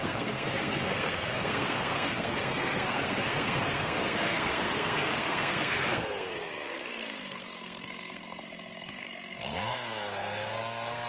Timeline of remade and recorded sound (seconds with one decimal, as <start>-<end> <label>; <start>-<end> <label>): 0.0-11.1 remade